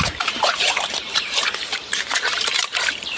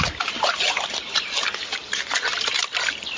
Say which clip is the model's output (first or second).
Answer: first